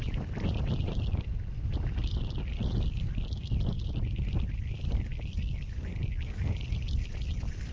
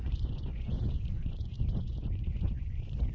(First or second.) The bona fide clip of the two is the first